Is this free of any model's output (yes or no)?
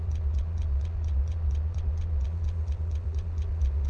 no